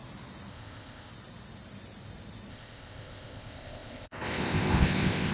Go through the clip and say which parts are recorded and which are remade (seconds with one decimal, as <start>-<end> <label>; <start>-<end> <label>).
0.0-0.5 recorded; 0.5-1.1 remade; 1.1-2.5 recorded; 2.5-5.3 remade

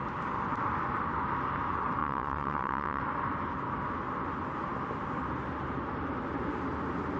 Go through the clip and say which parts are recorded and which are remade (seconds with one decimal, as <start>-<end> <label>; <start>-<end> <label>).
0.0-2.0 recorded; 2.0-3.0 remade; 3.0-7.2 recorded